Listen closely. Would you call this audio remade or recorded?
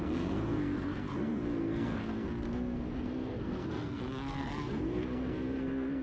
remade